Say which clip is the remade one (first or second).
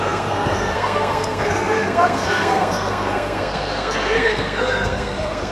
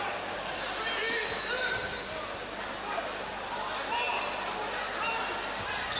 first